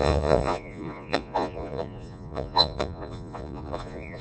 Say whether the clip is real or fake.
fake